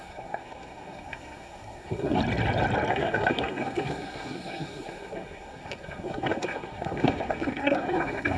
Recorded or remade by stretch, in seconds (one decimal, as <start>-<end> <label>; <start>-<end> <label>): 0.0-2.2 remade; 2.2-2.9 recorded; 2.9-8.4 remade